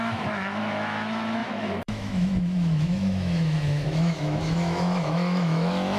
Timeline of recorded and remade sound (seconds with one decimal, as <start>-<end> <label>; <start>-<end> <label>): 0.0-6.0 remade